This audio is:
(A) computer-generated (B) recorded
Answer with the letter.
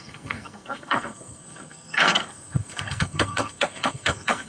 A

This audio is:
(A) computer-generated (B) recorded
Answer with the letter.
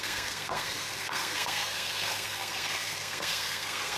A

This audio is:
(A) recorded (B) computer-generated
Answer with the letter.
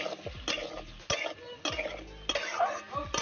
A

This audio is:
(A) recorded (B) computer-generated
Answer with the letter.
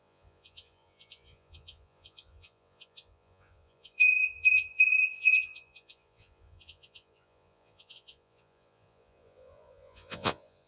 B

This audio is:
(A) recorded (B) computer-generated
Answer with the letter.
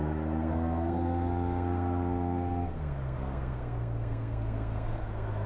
B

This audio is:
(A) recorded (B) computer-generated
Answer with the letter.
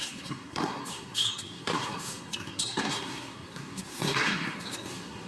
B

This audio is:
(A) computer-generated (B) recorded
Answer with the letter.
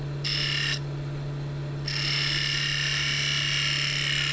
B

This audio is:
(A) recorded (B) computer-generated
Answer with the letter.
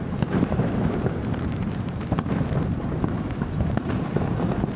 B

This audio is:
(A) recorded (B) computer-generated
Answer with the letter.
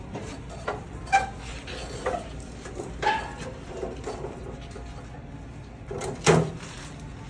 A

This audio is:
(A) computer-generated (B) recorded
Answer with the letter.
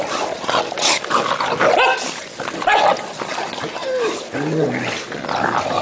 B